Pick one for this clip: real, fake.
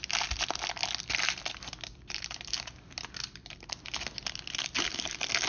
real